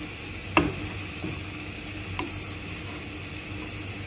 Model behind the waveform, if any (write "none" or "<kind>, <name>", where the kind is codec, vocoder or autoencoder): none